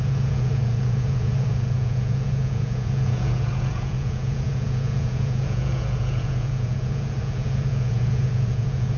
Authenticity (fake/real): fake